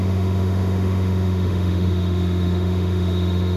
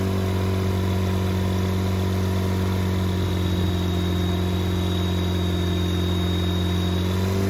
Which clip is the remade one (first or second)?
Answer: first